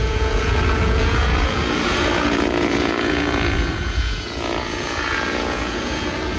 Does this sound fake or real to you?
fake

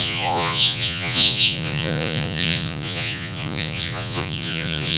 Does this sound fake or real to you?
fake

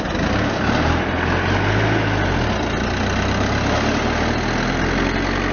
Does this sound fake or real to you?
real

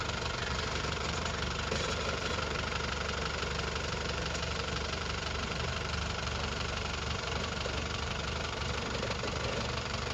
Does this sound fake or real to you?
fake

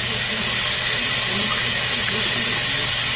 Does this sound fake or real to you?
real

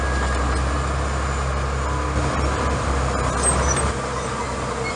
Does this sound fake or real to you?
real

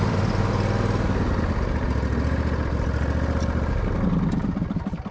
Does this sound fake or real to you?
real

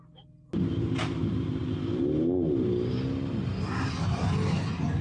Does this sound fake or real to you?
real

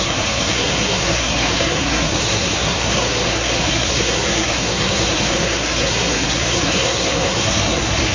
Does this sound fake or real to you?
fake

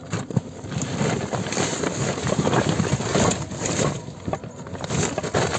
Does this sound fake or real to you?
real